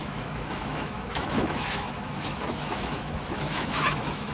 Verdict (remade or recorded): remade